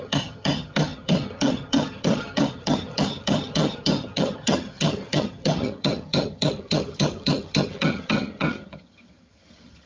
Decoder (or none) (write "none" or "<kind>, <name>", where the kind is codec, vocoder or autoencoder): vocoder, HiFi-GAN